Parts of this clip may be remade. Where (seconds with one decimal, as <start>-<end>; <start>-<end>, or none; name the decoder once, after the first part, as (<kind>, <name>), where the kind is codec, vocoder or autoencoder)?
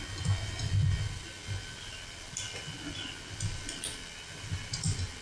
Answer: none